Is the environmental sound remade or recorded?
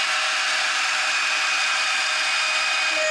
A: recorded